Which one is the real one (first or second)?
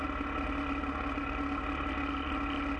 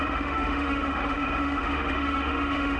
first